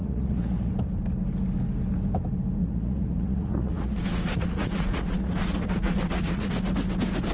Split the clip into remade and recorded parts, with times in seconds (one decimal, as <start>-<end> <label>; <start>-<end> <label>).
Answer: 0.0-0.7 remade; 0.7-2.6 recorded; 2.6-6.5 remade; 6.5-7.3 recorded